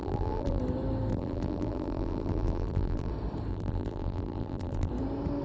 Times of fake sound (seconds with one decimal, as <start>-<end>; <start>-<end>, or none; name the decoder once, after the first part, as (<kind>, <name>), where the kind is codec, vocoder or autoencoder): 0.0-0.6 (vocoder, BigVGAN v2); 1.1-3.1; 3.5-4.9